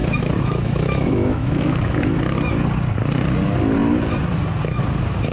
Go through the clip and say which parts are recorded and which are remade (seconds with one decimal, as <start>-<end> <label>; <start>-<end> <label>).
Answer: 0.0-2.1 remade; 2.1-5.3 recorded